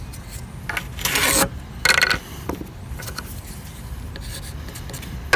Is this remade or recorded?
recorded